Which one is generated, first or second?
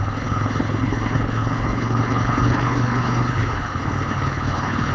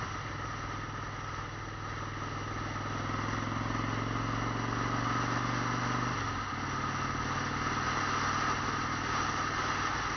first